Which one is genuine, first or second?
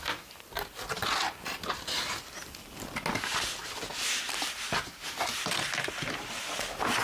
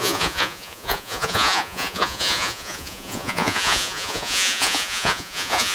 first